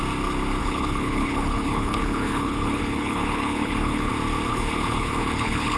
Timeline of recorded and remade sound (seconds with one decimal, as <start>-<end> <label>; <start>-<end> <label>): 0.0-0.6 recorded; 0.6-4.1 remade; 4.1-4.5 recorded; 4.5-5.8 remade